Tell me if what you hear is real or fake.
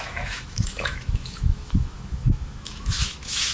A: fake